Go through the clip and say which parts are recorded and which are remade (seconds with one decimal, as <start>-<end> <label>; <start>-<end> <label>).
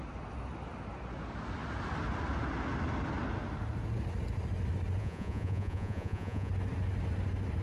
0.0-5.0 recorded; 5.0-6.5 remade; 6.5-7.6 recorded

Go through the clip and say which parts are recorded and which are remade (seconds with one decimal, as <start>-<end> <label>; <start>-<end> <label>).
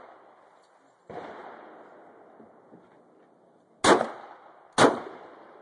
0.0-1.4 remade; 1.4-4.8 recorded; 4.8-5.6 remade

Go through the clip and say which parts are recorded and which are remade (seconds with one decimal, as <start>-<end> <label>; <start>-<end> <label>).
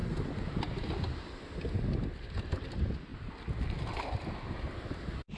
0.0-5.4 recorded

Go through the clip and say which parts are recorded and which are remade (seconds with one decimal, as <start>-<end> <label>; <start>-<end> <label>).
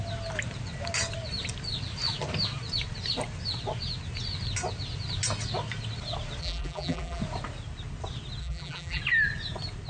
0.0-6.4 recorded; 6.4-7.2 remade; 7.2-8.4 recorded; 8.4-9.0 remade; 9.0-9.9 recorded